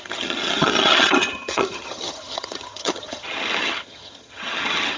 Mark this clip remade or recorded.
remade